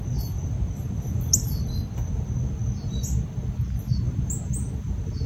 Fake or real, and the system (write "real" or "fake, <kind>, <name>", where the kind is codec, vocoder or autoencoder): real